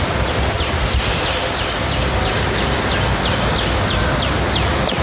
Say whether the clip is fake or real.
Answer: real